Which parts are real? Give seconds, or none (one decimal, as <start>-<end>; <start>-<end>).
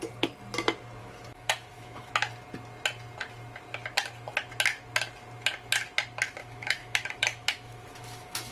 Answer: 0.0-1.0; 2.1-6.4